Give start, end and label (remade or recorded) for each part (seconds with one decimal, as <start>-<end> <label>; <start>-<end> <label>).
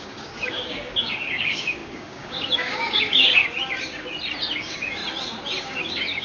0.0-3.4 remade; 3.4-4.6 recorded; 4.6-5.0 remade; 5.0-5.6 recorded; 5.6-6.2 remade